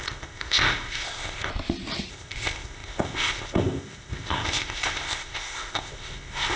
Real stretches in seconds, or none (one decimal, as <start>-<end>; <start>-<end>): 1.5-2.1